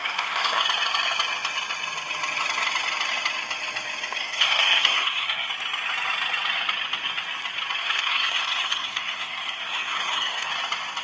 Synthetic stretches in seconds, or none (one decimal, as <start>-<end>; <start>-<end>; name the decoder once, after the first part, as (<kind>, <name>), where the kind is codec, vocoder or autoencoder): 0.0-0.6 (codec, SNAC); 4.2-5.5; 7.8-10.5